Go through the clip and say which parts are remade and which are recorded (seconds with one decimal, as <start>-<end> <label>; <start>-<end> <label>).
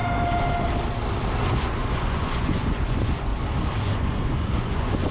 0.0-1.5 recorded; 1.5-3.3 remade; 3.3-3.8 recorded; 3.8-5.1 remade